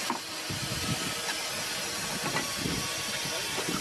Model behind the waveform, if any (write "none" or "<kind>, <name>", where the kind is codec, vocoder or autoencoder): none